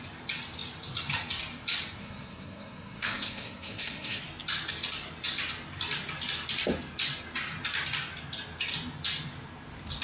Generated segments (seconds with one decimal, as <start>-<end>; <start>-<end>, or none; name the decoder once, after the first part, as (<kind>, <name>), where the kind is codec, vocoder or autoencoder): 2.0-4.2 (codec, SNAC)

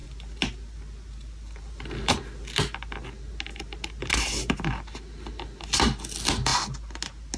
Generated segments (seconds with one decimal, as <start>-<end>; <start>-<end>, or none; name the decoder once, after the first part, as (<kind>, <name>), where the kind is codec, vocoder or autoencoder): none

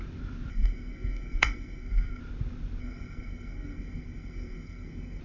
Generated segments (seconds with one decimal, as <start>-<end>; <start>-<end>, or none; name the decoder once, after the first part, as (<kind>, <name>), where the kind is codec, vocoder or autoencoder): 0.5-2.2 (codec, SNAC); 2.8-5.2

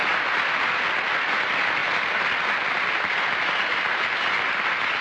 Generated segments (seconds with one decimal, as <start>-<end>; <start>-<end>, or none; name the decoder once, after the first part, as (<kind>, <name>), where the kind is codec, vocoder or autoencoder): none